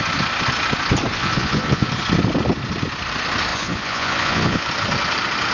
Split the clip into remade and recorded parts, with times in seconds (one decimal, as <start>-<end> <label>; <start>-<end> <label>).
0.0-1.1 recorded; 1.1-1.9 remade; 1.9-3.5 recorded; 3.5-4.7 remade; 4.7-5.5 recorded